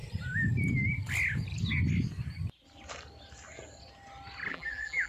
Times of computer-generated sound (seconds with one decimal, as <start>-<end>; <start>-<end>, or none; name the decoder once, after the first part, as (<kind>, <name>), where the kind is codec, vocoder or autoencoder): 4.5-5.1 (vocoder, BigVGAN v2)